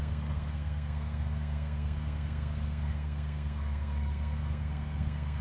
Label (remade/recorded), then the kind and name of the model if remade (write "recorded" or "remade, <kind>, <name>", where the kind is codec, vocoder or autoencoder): remade, codec, SNAC